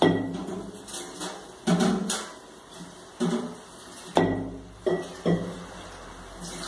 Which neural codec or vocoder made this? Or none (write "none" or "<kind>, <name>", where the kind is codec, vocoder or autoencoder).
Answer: none